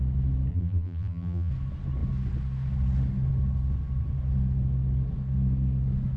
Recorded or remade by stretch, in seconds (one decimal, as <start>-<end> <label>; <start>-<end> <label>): 0.0-0.5 recorded; 0.5-1.5 remade; 1.5-6.2 recorded